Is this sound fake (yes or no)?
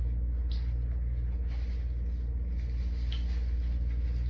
no